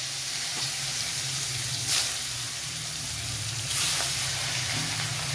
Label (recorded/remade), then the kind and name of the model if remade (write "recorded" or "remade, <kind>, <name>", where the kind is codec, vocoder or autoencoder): remade, vocoder, BigVGAN v2